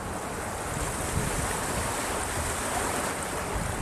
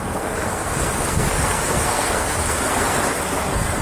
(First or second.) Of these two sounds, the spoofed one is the second